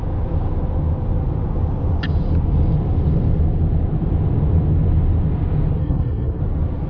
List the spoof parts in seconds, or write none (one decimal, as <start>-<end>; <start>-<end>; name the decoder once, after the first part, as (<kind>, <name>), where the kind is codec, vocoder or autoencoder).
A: 5.8-6.4 (codec, SNAC)